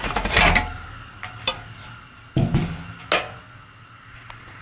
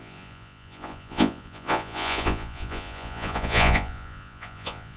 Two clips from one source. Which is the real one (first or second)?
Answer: first